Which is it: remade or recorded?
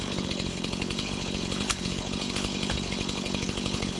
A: remade